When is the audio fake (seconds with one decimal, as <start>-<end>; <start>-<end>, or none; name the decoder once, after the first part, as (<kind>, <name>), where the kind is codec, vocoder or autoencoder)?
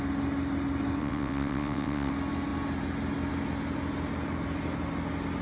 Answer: 1.0-2.1 (vocoder, WaveNeXt)